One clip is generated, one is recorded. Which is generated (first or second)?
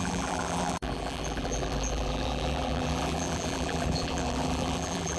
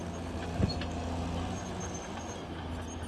first